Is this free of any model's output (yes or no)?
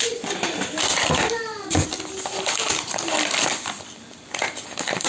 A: no